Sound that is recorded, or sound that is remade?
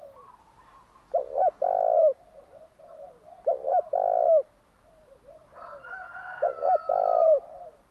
remade